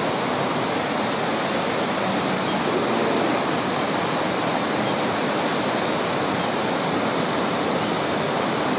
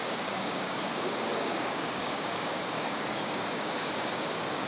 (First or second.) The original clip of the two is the first